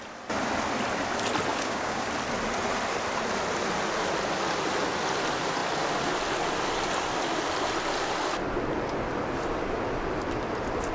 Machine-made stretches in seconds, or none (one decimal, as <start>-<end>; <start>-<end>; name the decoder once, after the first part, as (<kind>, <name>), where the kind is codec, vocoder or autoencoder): 1.5-2.1 (codec, DAC)